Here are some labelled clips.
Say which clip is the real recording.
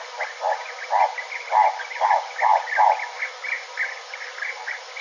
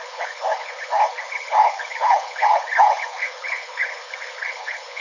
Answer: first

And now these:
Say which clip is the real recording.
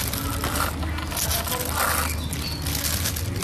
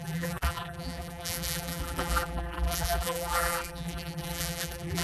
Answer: first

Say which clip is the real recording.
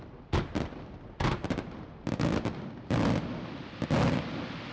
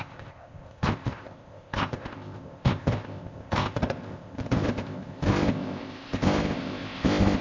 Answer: first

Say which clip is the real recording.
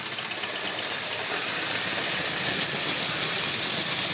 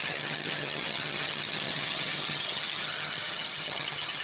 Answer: first